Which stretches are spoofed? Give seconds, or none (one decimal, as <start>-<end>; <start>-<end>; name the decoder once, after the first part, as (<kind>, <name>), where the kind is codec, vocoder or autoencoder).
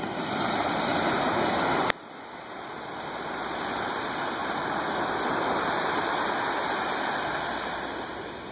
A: 0.0-0.9 (vocoder, BigVGAN v2); 2.3-8.5